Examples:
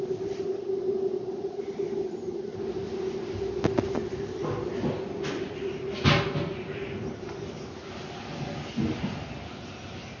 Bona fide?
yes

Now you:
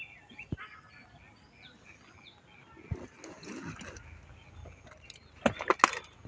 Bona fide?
yes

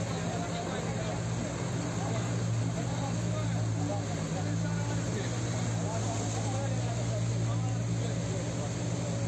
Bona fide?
yes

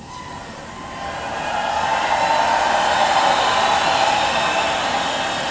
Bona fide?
yes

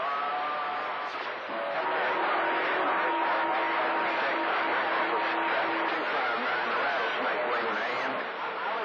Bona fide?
yes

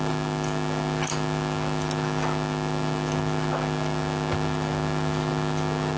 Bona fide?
yes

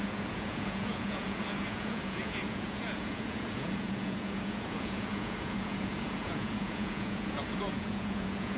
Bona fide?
no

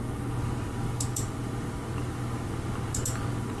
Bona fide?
yes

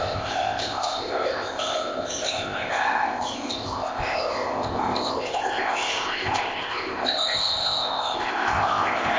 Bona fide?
no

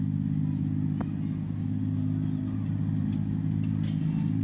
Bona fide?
yes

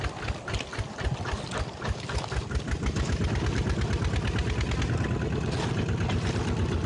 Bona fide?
yes